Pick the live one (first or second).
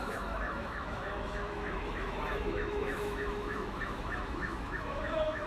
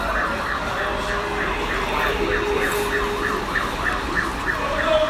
second